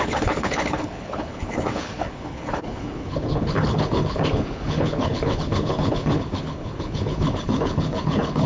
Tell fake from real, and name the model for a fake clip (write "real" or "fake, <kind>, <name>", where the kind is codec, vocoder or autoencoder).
fake, codec, HILCodec